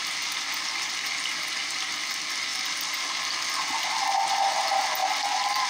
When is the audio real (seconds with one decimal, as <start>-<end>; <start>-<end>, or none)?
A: 0.0-5.7